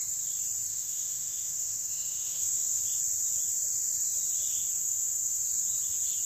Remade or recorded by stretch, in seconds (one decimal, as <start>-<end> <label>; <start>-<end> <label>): 0.0-0.7 recorded; 0.7-2.8 remade; 2.8-4.8 recorded; 4.8-5.4 remade; 5.4-6.2 recorded

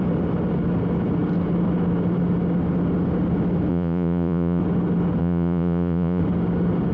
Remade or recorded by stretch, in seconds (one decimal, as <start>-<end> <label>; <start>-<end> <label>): 0.0-3.7 recorded; 3.7-4.6 remade; 4.6-5.2 recorded; 5.2-6.2 remade; 6.2-6.9 recorded

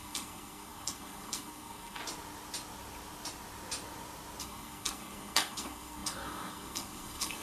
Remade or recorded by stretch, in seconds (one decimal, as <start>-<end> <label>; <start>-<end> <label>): 0.0-2.0 remade; 2.0-4.4 recorded; 4.4-7.4 remade

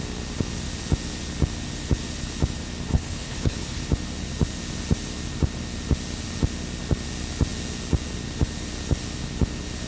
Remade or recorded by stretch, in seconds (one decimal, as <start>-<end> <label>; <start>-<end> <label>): 0.0-2.9 recorded; 2.9-3.8 remade; 3.8-9.9 recorded

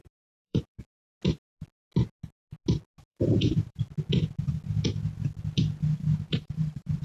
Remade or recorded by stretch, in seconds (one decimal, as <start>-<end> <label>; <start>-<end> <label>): 0.0-0.8 remade; 0.8-3.1 recorded; 3.1-3.8 remade; 3.8-6.3 recorded; 6.3-7.0 remade

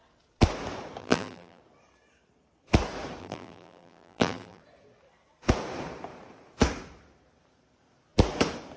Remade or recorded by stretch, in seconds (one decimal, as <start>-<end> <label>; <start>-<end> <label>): 0.0-1.0 recorded; 1.0-1.6 remade; 1.6-3.2 recorded; 3.2-4.6 remade; 4.6-8.8 recorded

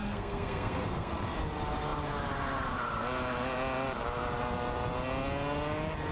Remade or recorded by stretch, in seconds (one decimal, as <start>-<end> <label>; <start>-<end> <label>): 0.0-1.1 remade; 1.1-6.1 recorded

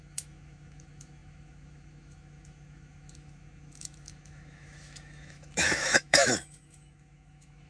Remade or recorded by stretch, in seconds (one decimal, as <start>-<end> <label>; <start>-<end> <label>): 0.0-7.7 remade